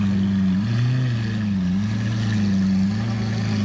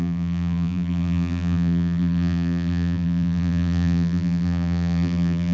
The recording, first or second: first